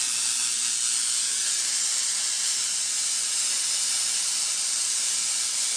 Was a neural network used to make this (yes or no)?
no